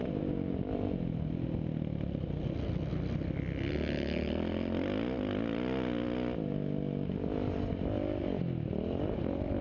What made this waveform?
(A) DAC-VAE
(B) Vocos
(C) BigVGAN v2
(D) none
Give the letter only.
D